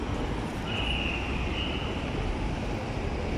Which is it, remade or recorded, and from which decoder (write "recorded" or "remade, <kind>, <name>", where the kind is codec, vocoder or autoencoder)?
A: recorded